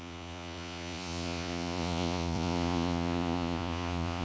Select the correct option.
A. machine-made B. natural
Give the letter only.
A